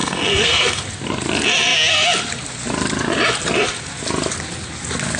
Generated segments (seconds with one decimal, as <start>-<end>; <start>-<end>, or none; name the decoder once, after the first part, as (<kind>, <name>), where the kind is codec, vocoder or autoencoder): 0.0-0.8 (codec, SNAC)